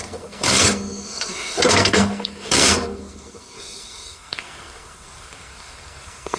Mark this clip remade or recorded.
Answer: remade